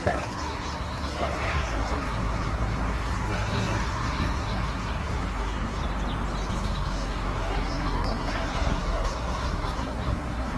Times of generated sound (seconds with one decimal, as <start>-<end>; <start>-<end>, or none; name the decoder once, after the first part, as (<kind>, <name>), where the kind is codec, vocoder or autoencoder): 0.0-5.8 (codec, SNAC); 6.5-10.6